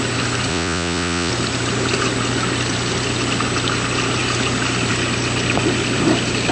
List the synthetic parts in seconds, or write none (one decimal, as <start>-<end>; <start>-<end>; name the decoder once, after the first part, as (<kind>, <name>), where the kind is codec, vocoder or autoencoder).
0.5-1.3 (vocoder, Vocos)